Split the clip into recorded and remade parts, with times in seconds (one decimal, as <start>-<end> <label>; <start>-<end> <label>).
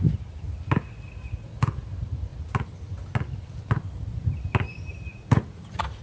0.0-5.1 recorded; 5.1-6.0 remade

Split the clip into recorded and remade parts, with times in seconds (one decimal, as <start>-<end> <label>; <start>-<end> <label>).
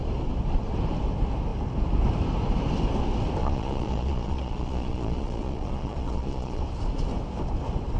0.0-3.4 recorded; 3.4-6.6 remade; 6.6-8.0 recorded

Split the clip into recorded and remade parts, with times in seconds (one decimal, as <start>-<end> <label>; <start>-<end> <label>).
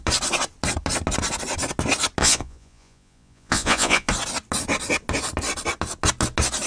0.0-2.2 recorded; 2.2-4.1 remade; 4.1-6.7 recorded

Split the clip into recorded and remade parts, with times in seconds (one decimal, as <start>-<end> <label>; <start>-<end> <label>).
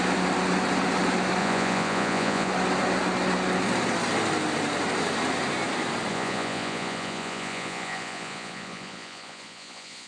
0.0-1.4 recorded; 1.4-2.5 remade; 2.5-6.1 recorded; 6.1-10.1 remade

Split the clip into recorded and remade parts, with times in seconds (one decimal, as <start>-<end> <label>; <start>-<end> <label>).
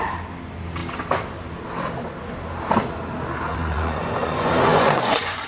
0.0-3.5 recorded; 3.5-5.5 remade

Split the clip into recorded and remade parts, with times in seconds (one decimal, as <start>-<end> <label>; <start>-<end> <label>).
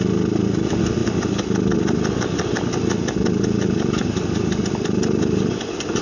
0.0-6.0 recorded